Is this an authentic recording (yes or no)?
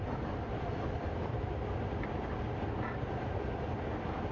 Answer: yes